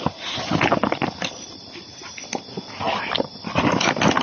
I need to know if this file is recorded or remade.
recorded